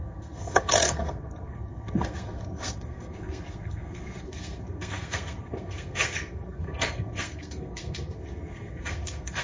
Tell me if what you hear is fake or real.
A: fake